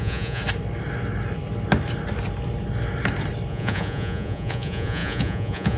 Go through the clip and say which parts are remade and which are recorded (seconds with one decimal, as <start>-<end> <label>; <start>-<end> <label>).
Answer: 0.0-0.4 remade; 0.4-3.5 recorded; 3.5-5.8 remade